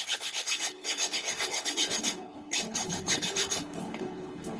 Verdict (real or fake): fake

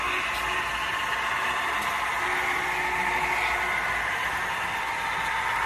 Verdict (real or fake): real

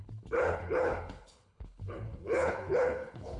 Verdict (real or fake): fake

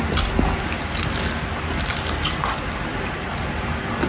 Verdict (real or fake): real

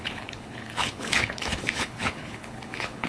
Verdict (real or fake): fake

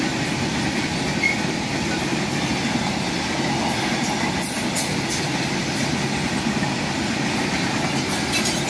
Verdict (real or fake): real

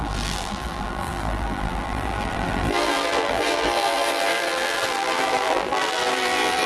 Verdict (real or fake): fake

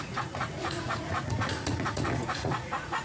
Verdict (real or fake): fake